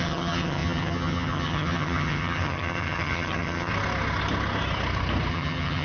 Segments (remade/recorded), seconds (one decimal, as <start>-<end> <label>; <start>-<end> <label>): 0.0-3.7 remade; 3.7-5.3 recorded; 5.3-5.8 remade